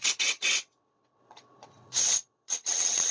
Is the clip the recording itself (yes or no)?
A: no